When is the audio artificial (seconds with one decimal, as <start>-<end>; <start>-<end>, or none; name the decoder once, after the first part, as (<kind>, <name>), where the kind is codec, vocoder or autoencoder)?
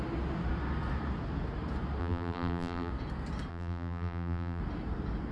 2.0-2.9 (vocoder, BigVGAN v2); 3.5-4.6